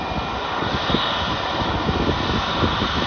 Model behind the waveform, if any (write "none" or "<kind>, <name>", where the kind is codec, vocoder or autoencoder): none